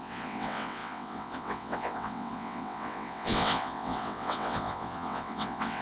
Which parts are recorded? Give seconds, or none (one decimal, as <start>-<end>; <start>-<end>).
none